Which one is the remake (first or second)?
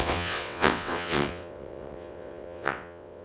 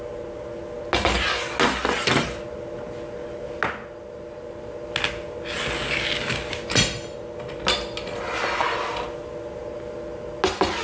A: first